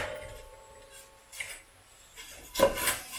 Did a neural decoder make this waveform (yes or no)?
no